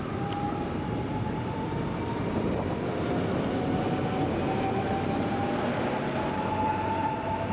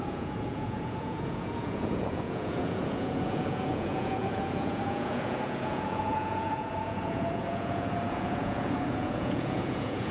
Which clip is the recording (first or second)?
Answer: first